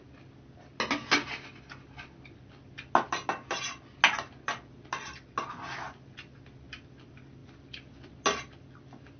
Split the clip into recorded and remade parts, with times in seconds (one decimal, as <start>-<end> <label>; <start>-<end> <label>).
0.0-9.2 recorded